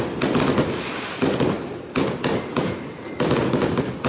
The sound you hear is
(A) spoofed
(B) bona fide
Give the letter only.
B